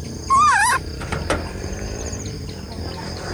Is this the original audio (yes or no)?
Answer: no